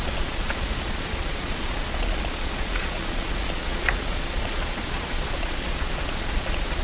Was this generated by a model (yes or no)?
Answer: yes